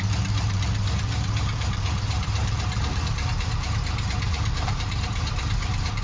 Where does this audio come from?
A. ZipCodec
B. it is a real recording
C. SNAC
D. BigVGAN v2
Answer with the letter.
D